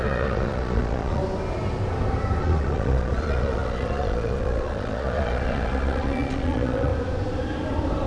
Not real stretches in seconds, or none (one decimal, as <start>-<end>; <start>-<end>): 0.0-1.2; 2.4-6.9